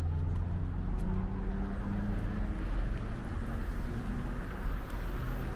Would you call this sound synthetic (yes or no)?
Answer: no